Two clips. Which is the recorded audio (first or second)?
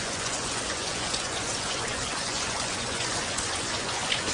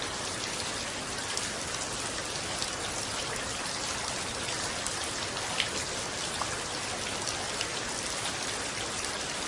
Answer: second